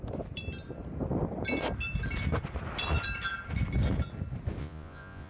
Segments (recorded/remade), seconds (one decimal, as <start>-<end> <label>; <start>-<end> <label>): 0.0-4.6 recorded; 4.6-5.3 remade